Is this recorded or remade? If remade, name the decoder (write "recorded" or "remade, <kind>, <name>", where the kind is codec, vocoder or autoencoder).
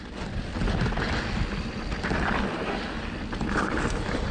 recorded